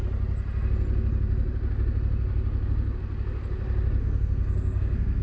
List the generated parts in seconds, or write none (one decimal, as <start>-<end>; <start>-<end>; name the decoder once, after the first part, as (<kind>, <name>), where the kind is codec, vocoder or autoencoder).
4.0-5.2 (codec, SNAC)